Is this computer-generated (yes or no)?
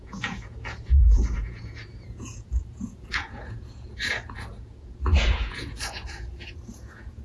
yes